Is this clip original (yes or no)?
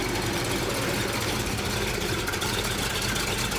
yes